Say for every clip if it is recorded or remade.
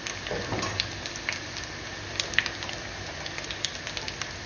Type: recorded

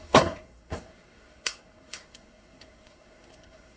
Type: remade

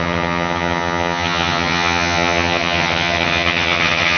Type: remade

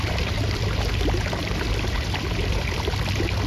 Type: remade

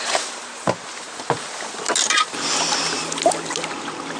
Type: recorded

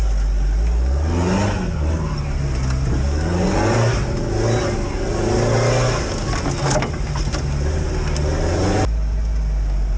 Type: recorded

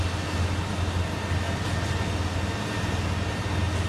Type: recorded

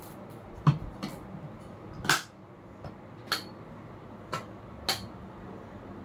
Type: recorded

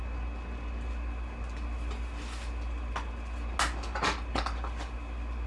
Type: recorded